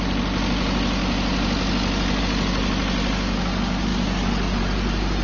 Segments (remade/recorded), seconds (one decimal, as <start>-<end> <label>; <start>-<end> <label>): 0.0-5.2 recorded